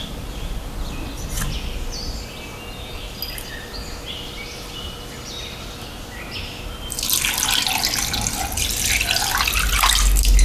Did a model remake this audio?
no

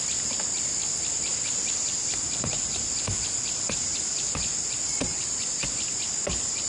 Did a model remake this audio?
yes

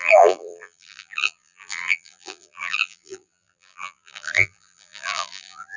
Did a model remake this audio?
yes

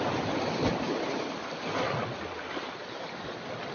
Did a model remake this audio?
no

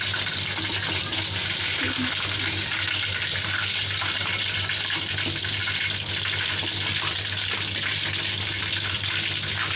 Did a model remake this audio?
no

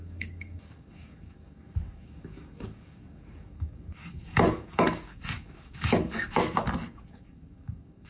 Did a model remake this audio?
yes